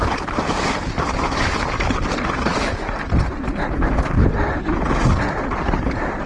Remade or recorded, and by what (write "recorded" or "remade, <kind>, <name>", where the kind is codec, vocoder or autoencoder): recorded